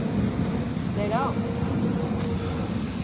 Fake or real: real